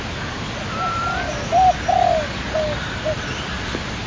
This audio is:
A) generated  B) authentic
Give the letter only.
B